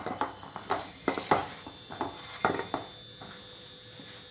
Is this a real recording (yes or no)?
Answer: yes